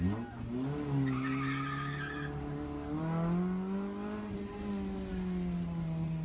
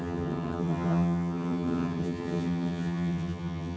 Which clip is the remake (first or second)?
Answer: second